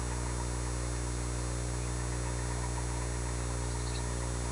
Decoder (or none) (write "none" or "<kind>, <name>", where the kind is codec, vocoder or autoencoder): none